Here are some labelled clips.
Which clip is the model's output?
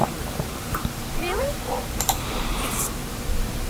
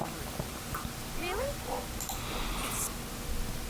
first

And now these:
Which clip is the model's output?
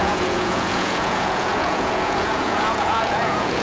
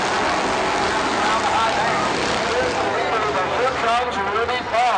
first